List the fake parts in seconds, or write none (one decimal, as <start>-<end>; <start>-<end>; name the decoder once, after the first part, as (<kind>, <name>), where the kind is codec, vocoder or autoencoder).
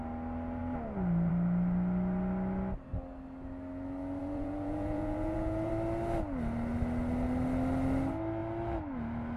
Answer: 4.2-5.7 (vocoder, Vocos)